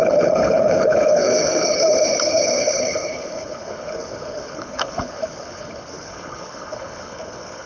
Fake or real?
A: fake